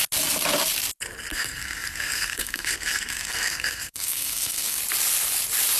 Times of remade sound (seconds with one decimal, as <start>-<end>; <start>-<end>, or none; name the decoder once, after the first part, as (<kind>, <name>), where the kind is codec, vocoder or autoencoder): 1.3-4.8 (codec, SNAC)